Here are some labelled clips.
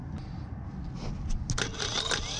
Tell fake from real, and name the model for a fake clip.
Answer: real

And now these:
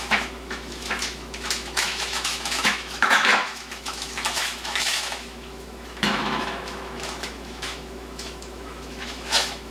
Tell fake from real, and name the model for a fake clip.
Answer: fake, autoencoder, DAC-VAE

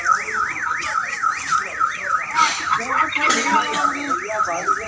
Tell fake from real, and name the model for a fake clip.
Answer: real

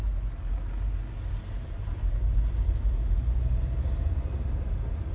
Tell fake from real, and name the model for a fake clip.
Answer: real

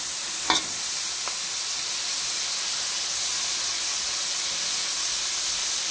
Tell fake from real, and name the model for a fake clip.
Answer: real